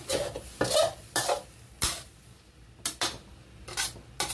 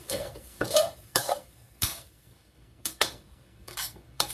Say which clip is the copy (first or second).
second